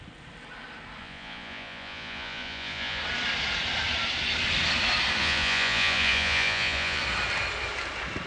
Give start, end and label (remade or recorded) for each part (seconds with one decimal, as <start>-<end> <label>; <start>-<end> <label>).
0.0-1.0 recorded; 1.0-3.0 remade; 3.0-5.2 recorded; 5.2-7.0 remade; 7.0-8.3 recorded